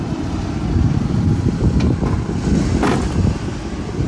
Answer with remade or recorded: recorded